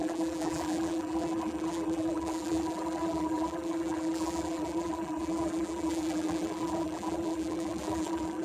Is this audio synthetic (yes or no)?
yes